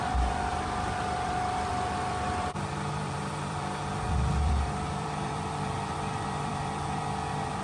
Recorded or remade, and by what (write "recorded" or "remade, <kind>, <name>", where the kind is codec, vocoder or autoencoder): remade, vocoder, BigVGAN v2